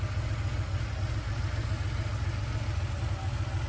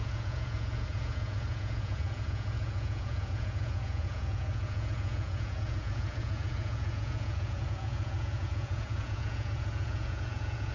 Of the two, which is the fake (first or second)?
second